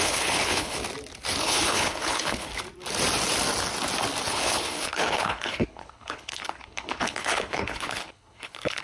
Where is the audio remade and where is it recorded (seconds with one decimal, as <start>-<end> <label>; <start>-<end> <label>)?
0.0-0.8 remade; 0.8-1.4 recorded; 1.4-2.5 remade; 2.5-4.3 recorded; 4.3-8.8 remade